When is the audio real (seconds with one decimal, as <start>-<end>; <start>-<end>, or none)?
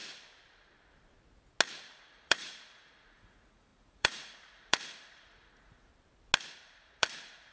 0.0-2.0; 5.9-6.6